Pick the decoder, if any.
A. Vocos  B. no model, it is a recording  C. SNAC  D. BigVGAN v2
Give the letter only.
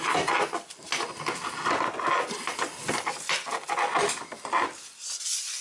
B